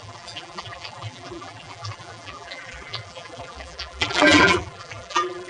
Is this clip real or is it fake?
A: fake